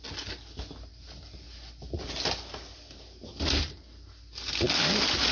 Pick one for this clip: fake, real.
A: real